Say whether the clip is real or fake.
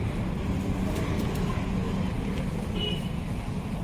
real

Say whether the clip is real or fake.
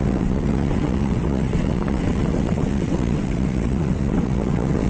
fake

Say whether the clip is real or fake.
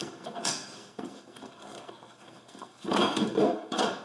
fake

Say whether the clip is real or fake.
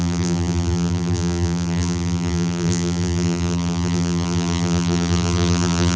fake